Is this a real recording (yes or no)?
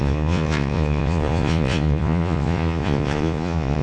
no